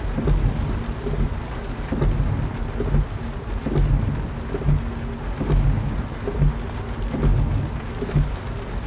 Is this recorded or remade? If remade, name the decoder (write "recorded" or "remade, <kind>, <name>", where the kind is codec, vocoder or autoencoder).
recorded